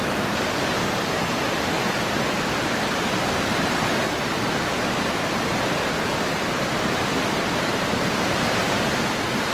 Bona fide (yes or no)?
no